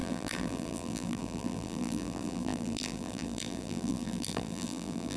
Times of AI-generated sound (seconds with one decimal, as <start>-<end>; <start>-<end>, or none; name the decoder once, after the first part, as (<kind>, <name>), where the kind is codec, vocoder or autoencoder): 0.0-5.2 (vocoder, BigVGAN v2)